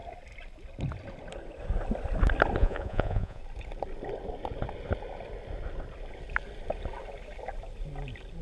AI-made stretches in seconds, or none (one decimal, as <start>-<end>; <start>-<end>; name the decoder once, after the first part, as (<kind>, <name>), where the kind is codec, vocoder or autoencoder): 2.6-3.4 (vocoder, Vocos)